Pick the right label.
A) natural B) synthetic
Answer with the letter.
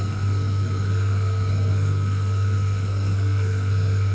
B